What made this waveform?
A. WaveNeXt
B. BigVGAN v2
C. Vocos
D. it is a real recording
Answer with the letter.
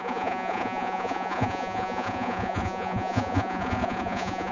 C